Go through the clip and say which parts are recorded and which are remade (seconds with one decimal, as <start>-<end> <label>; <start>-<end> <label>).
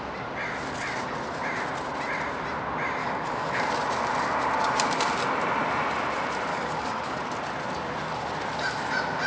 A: 0.0-3.0 recorded; 3.0-3.7 remade; 3.7-6.5 recorded; 6.5-7.2 remade; 7.2-9.3 recorded